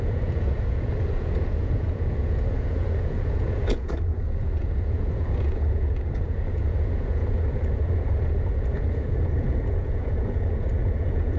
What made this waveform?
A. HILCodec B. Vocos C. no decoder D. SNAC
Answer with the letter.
B